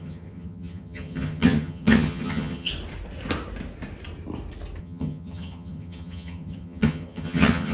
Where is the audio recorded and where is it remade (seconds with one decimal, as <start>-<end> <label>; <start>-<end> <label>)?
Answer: 0.0-2.7 remade; 2.7-4.8 recorded; 4.8-7.7 remade